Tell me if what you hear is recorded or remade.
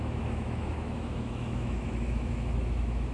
remade